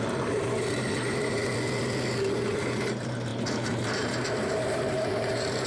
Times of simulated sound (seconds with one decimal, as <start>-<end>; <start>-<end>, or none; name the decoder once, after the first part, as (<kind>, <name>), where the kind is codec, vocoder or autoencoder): 0.0-1.4 (vocoder, BigVGAN v2); 2.3-5.7